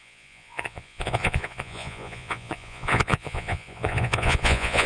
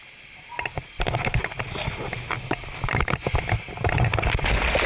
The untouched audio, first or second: second